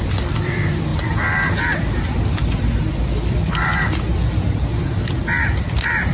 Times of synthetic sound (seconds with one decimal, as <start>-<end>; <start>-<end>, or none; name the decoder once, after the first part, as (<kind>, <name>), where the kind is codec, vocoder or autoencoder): 0.0-0.9 (vocoder, BigVGAN v2); 1.7-2.4; 2.9-4.2; 5.2-6.1